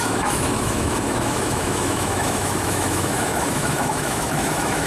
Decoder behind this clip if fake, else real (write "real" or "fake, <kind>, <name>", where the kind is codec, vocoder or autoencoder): fake, autoencoder, DAC-VAE